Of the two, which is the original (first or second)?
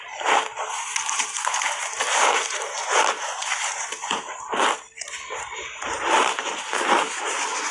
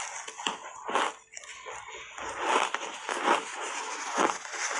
second